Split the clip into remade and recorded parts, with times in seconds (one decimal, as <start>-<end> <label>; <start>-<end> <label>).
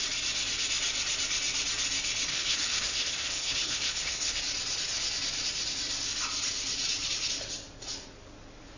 0.0-2.3 recorded; 2.3-4.4 remade; 4.4-8.8 recorded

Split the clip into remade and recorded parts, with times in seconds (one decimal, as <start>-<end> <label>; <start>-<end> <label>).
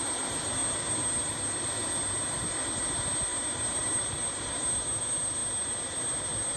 0.0-3.3 recorded; 3.3-5.0 remade; 5.0-6.6 recorded